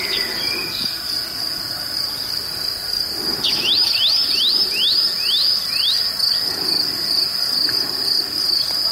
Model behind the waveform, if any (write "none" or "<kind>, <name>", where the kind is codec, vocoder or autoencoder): none